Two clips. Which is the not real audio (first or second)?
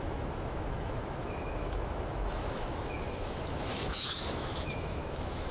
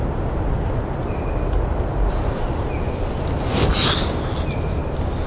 first